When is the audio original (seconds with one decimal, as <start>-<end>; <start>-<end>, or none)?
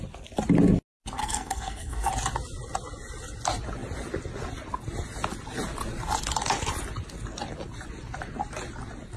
0.0-1.2; 2.1-9.2